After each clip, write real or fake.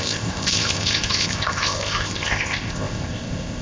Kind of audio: fake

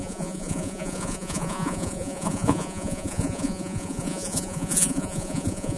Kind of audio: fake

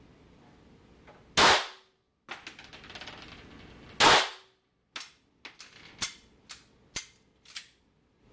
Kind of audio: real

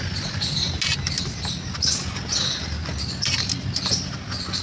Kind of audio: real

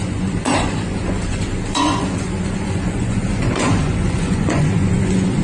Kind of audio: fake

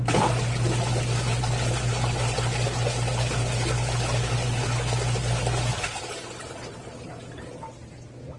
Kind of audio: real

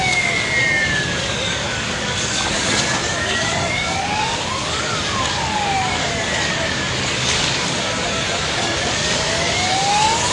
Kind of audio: fake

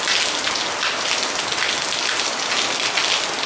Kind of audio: real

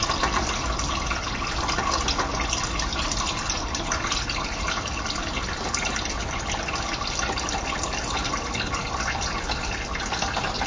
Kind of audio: real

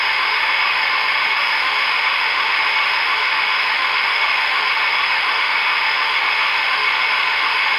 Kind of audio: fake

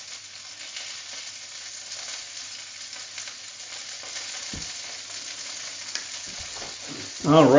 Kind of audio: real